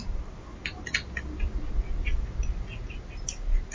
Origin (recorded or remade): recorded